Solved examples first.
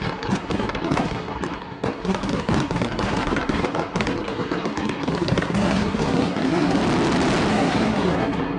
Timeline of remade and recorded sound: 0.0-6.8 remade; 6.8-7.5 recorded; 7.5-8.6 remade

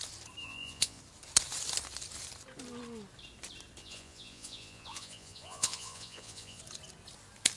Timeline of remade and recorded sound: 0.0-0.4 recorded; 0.4-1.0 remade; 1.0-3.8 recorded; 3.8-6.6 remade; 6.6-7.6 recorded

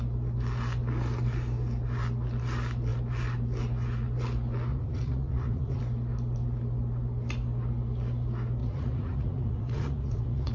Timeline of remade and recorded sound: 0.0-4.7 recorded; 4.7-5.8 remade; 5.8-8.6 recorded; 8.6-10.5 remade

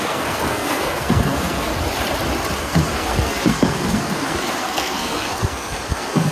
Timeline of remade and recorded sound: 0.0-1.7 remade; 1.7-2.6 recorded; 2.6-6.3 remade

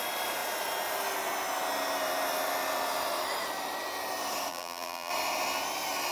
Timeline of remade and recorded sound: 0.0-4.5 recorded; 4.5-5.1 remade; 5.1-6.1 recorded